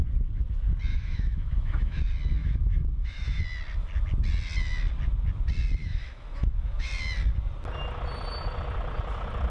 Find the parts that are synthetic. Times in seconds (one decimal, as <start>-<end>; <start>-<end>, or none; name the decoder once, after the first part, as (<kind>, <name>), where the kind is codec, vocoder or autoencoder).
0.9-2.0 (autoencoder, DAC-VAE); 2.4-3.4; 5.8-6.9